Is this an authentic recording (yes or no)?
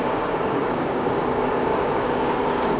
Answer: no